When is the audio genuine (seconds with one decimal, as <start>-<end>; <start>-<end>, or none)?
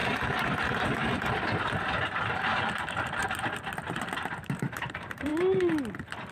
0.0-1.6; 3.2-4.2; 5.3-6.3